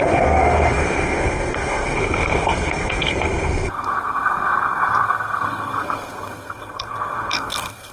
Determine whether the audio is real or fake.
fake